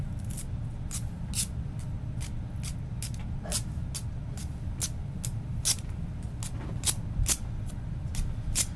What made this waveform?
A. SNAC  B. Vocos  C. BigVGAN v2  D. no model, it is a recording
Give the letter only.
D